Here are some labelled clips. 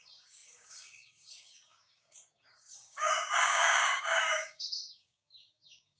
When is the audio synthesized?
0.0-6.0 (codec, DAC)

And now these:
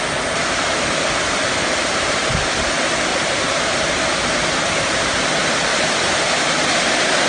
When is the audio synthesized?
1.8-2.7 (vocoder, BigVGAN v2); 3.1-4.0

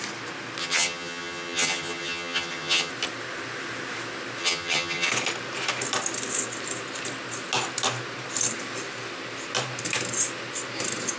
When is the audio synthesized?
0.6-2.9 (vocoder, HiFi-GAN); 4.4-5.1

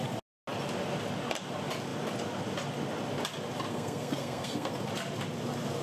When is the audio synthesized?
3.7-4.7 (codec, SNAC)

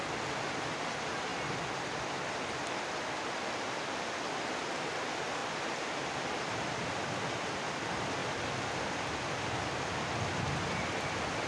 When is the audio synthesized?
none

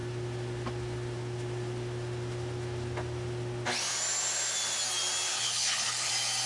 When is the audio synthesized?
5.3-6.1 (codec, HILCodec)

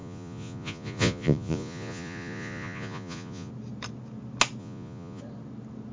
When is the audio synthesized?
0.0-3.5 (vocoder, Vocos); 4.6-5.2

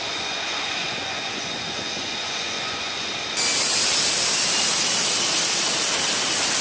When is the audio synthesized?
0.0-3.1 (vocoder, Vocos)